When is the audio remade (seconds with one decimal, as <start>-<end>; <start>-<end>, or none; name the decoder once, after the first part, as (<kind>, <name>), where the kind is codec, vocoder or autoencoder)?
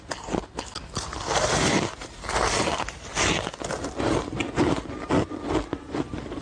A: none